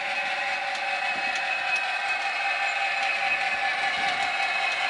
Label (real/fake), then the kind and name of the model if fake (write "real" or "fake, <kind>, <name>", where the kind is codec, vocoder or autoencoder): real